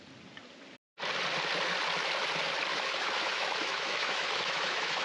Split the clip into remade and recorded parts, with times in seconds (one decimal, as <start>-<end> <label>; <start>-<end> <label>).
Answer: 0.0-2.7 recorded; 2.7-5.0 remade